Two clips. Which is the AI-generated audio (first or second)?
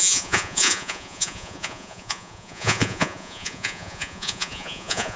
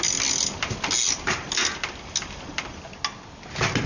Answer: first